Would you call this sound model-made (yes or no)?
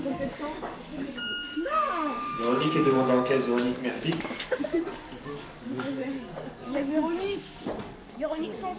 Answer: yes